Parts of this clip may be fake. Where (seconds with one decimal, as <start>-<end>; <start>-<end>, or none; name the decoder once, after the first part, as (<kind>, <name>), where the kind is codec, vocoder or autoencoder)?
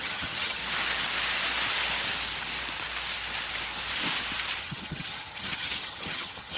0.0-0.6 (vocoder, HiFi-GAN); 4.6-6.6